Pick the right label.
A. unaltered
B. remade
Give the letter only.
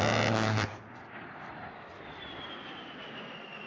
A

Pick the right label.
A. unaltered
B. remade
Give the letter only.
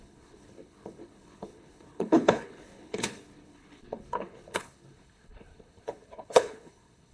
B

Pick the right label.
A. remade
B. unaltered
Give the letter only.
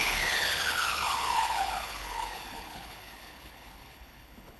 A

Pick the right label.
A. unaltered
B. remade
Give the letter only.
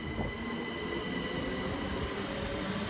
A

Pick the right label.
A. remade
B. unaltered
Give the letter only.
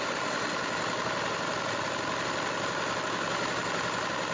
B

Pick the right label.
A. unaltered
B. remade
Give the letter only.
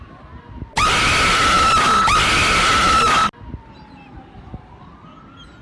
A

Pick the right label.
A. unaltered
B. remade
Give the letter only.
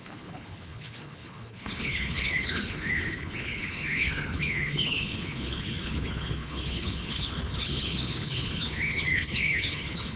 B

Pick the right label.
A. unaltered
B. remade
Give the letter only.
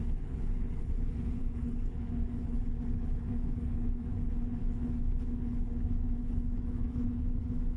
B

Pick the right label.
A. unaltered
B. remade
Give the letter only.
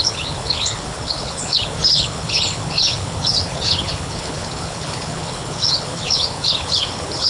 B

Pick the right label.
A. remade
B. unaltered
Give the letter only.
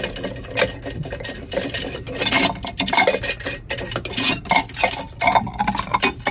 B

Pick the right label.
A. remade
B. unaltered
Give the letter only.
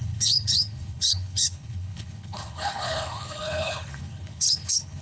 A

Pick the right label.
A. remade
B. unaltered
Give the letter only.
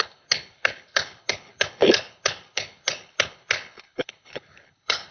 A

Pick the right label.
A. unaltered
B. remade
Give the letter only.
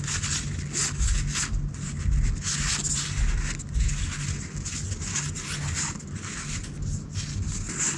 A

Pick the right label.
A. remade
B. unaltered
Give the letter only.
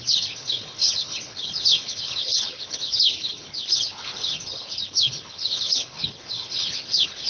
A